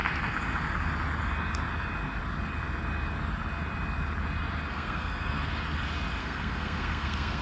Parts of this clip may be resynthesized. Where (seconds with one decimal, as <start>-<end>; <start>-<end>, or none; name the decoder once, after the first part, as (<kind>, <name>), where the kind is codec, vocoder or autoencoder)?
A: 4.7-5.5 (codec, SNAC); 6.2-7.4